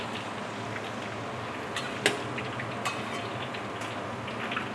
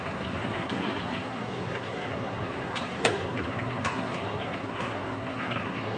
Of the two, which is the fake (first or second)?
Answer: second